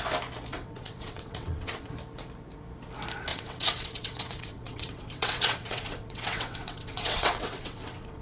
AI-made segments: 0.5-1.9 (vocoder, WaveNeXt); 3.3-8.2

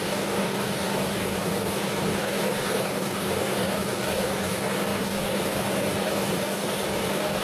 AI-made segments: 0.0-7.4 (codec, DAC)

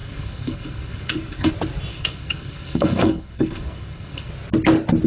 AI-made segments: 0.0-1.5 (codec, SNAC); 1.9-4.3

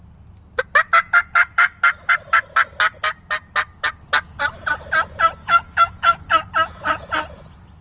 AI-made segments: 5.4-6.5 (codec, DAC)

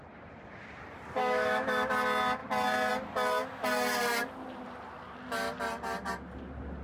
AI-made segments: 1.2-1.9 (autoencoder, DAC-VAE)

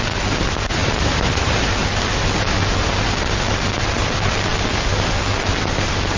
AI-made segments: 0.8-1.7 (vocoder, BigVGAN v2)